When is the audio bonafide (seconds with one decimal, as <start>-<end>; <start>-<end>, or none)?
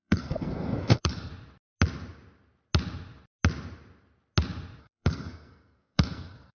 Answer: 1.3-4.8